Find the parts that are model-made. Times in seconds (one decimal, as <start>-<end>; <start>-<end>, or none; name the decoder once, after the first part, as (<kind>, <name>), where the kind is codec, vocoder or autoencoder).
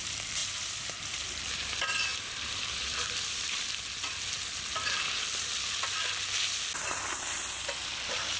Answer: 0.4-1.0 (vocoder, BigVGAN v2); 2.1-3.6